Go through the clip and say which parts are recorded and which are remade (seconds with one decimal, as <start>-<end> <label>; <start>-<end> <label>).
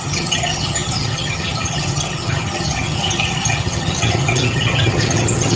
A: 0.0-5.6 remade